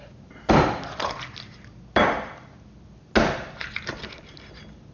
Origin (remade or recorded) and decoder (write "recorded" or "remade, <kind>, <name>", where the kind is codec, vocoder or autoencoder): recorded